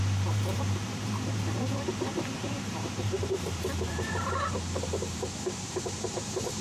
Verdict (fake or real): fake